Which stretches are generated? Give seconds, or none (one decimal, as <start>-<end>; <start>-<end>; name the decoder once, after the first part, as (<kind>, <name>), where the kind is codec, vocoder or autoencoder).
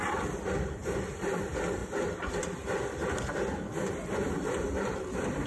none